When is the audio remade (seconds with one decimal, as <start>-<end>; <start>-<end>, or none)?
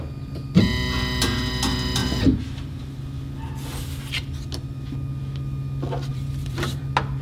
2.0-3.0; 6.1-6.8